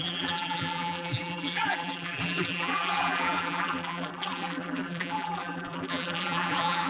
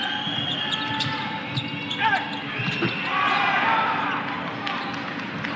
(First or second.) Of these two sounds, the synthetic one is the first